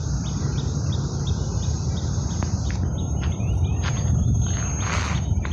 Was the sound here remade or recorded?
recorded